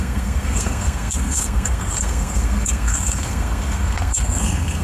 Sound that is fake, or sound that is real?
fake